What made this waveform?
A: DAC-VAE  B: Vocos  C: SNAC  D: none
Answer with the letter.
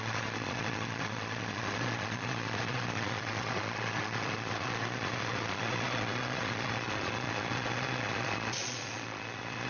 B